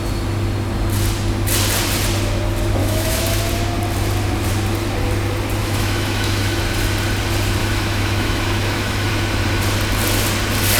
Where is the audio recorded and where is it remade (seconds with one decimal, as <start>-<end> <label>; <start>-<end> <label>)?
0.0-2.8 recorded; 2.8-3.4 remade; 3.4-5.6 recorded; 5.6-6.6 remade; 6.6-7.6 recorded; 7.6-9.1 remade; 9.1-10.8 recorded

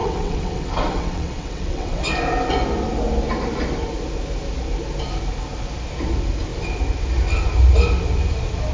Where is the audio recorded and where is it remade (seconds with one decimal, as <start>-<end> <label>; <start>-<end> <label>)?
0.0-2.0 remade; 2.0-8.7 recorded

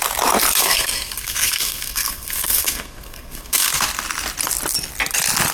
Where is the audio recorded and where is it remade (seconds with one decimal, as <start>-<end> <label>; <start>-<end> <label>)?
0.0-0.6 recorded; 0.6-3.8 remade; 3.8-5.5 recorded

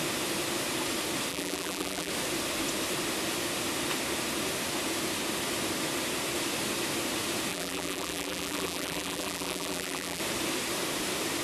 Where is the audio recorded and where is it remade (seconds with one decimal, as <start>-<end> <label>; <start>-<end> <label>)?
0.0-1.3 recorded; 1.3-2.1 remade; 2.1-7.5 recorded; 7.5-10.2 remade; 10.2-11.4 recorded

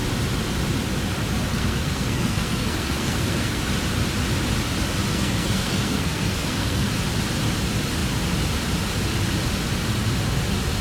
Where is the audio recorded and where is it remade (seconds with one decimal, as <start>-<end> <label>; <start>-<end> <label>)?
0.0-1.5 recorded; 1.5-3.6 remade; 3.6-5.1 recorded; 5.1-6.9 remade; 6.9-10.8 recorded

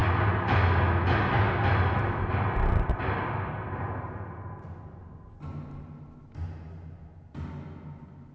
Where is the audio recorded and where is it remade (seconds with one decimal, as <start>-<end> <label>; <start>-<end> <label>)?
0.0-8.3 recorded

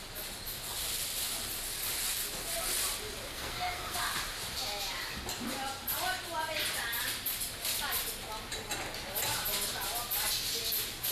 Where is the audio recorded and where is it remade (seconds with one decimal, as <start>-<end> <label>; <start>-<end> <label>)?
0.0-3.3 recorded; 3.3-4.0 remade; 4.0-11.1 recorded